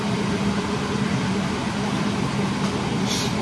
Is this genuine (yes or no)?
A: no